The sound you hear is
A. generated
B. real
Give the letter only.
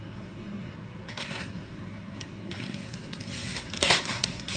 A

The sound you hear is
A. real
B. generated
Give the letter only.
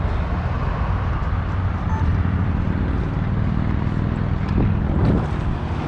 A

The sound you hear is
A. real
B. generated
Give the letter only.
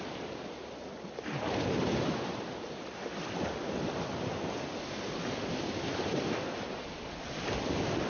A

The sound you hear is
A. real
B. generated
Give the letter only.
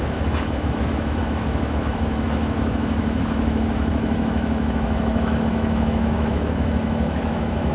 B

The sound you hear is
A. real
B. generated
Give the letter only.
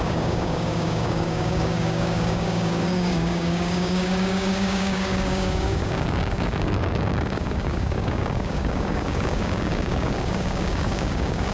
B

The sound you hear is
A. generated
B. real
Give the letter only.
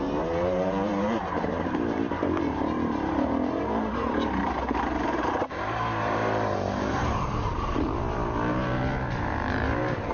A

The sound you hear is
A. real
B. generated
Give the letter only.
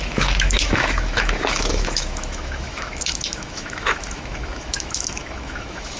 B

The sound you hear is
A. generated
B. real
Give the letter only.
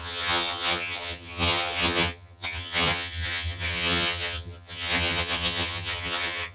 A